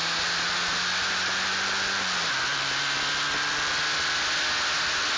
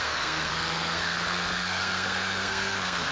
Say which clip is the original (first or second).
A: first